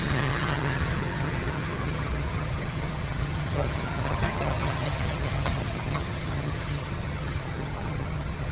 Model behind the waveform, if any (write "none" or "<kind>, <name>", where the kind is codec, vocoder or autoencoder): vocoder, HiFi-GAN